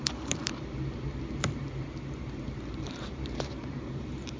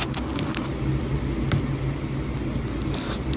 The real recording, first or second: second